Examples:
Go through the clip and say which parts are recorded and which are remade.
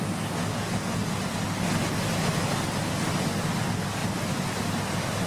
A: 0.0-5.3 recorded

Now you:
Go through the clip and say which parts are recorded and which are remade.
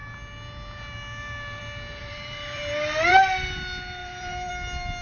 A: 0.0-2.0 recorded; 2.0-3.2 remade; 3.2-4.0 recorded; 4.0-4.5 remade; 4.5-5.0 recorded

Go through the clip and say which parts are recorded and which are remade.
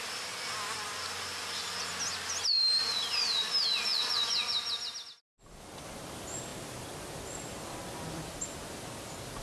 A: 0.0-3.9 recorded; 3.9-4.4 remade; 4.4-9.4 recorded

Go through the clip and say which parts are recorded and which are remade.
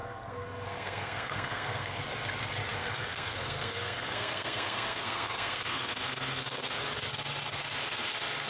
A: 0.0-2.0 remade; 2.0-2.8 recorded; 2.8-6.8 remade; 6.8-8.5 recorded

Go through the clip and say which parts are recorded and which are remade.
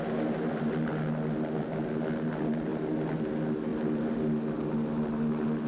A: 0.0-5.7 recorded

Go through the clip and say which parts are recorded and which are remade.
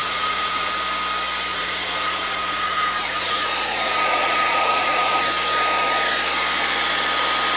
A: 0.0-0.7 remade; 0.7-1.5 recorded; 1.5-5.2 remade; 5.2-7.6 recorded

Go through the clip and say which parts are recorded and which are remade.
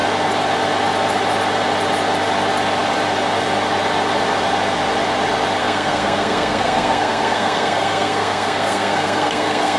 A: 0.0-5.6 recorded; 5.6-9.8 remade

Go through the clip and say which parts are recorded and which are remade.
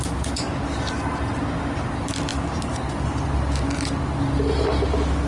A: 0.0-5.3 recorded